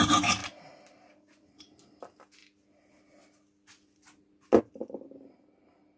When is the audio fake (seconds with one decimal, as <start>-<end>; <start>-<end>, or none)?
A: none